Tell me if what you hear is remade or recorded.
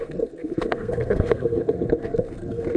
remade